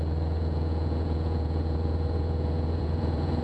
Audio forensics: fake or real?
fake